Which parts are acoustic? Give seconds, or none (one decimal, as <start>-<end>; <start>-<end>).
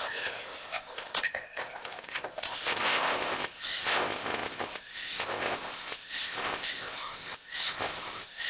none